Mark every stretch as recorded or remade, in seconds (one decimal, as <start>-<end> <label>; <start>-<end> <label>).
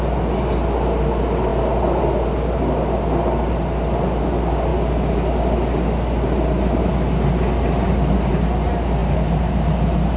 0.0-10.2 recorded